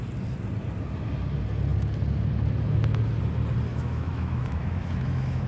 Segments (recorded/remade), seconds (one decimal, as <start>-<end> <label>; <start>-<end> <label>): 0.0-3.7 recorded; 3.7-5.5 remade